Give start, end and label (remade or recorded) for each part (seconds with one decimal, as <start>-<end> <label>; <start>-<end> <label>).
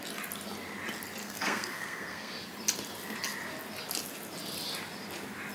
0.0-1.2 recorded; 1.2-2.3 remade; 2.3-5.5 recorded